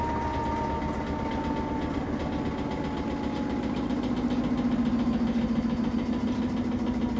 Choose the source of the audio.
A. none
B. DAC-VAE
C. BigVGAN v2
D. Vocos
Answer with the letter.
A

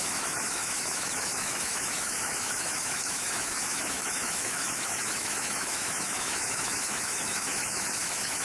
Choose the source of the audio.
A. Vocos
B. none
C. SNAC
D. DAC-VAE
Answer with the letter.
D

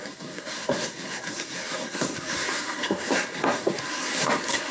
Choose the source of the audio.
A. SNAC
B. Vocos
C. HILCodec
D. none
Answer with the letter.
A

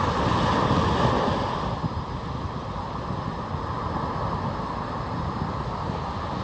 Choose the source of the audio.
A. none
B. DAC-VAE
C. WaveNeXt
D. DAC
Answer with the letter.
A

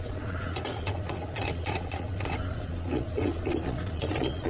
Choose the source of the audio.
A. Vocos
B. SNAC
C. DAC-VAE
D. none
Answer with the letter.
A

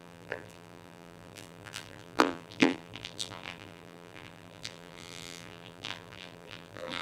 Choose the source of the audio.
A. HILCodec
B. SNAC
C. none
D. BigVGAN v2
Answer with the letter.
D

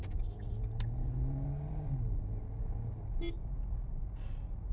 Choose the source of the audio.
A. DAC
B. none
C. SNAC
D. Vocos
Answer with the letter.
B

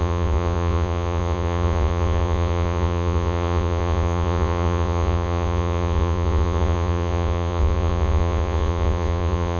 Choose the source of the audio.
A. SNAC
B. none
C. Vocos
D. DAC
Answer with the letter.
C